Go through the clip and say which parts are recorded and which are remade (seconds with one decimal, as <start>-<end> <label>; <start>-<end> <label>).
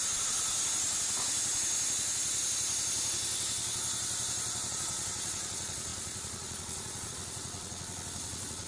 0.0-4.7 recorded; 4.7-8.7 remade